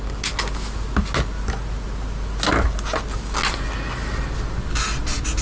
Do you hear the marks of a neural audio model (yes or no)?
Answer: no